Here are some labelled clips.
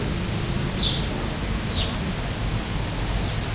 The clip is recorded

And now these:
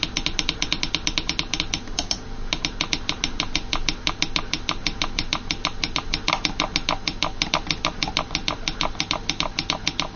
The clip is recorded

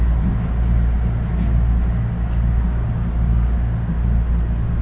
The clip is recorded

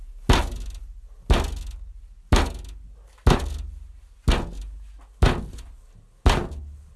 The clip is recorded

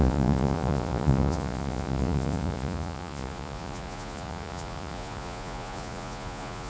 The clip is remade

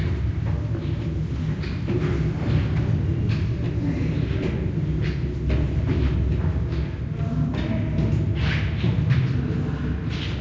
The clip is recorded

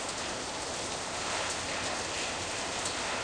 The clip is recorded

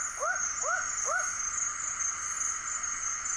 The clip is recorded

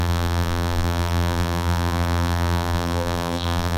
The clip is remade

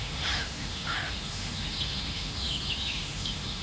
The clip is remade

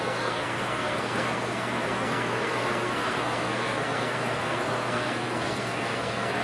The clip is remade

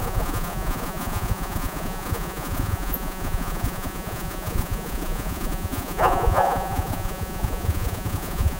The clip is remade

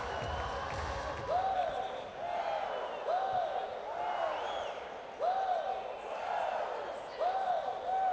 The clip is recorded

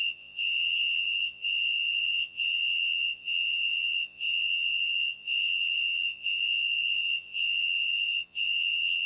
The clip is remade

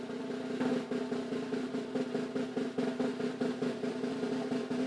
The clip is recorded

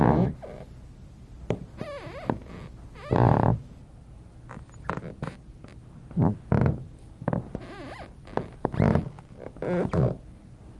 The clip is recorded